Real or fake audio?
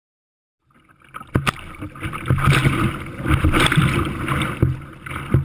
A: real